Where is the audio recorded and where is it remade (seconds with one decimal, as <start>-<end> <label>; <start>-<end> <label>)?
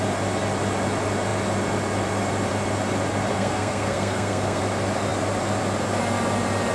0.0-3.3 recorded; 3.3-4.6 remade; 4.6-6.7 recorded